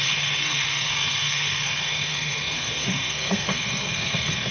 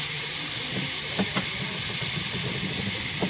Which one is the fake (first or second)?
first